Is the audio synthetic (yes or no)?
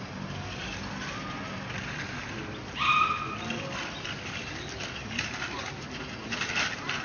no